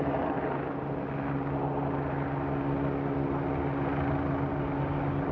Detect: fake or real real